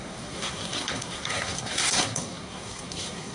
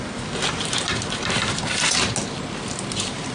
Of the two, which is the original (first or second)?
second